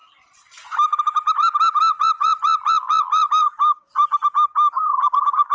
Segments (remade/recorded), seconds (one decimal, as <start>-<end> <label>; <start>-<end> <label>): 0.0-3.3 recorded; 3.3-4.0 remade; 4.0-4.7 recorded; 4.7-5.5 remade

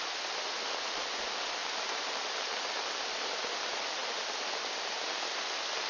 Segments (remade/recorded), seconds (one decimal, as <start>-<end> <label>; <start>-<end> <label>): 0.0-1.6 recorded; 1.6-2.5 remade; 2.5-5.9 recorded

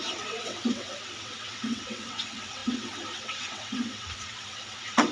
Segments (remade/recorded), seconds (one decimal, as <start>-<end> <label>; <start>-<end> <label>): 0.0-5.1 remade